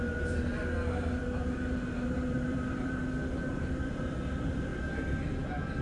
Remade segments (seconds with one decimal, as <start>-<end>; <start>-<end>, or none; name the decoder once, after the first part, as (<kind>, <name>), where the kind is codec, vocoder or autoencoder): 0.0-0.5 (vocoder, BigVGAN v2); 1.2-3.0; 3.5-4.7